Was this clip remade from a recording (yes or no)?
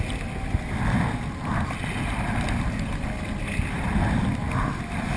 no